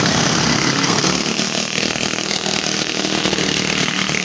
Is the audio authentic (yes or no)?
no